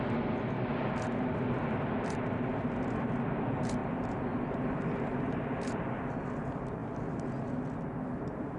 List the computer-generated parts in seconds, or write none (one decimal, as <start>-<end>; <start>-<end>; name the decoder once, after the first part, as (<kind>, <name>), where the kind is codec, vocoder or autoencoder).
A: 3.8-6.1 (vocoder, BigVGAN v2)